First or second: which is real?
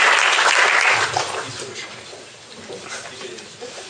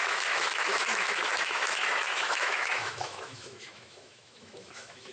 first